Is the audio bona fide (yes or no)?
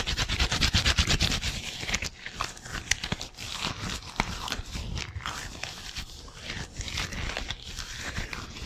yes